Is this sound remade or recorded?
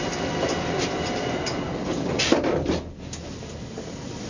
recorded